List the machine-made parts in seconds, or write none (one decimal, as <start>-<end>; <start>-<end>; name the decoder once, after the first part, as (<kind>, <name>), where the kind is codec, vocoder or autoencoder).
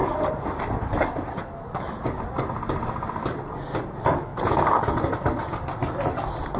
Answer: none